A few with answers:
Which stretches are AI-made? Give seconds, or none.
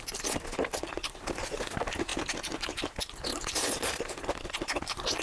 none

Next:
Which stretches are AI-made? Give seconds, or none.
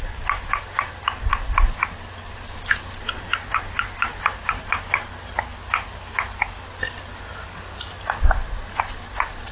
none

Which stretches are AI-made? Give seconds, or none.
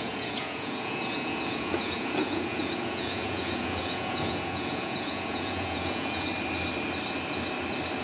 0.0-6.3 (vocoder, Vocos)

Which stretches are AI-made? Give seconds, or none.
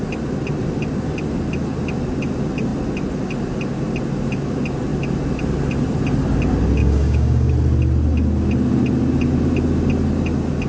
6.8-7.5 (codec, DAC)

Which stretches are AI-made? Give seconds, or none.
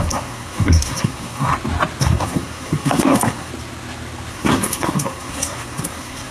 0.0-1.5 (codec, SNAC); 2.0-3.5; 4.3-6.3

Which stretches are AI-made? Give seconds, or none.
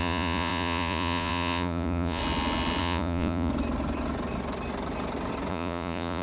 0.0-2.2 (vocoder, Vocos); 2.8-3.5; 5.5-6.2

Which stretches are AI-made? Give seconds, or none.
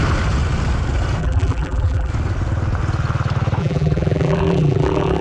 1.2-2.1 (vocoder, BigVGAN v2); 3.6-5.2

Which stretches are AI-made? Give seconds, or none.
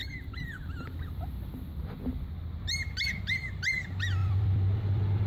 4.2-5.3 (vocoder, BigVGAN v2)